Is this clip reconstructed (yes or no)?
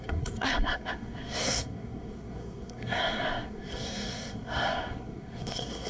yes